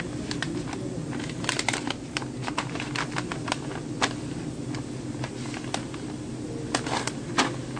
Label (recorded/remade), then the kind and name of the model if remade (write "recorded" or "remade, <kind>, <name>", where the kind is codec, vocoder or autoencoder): recorded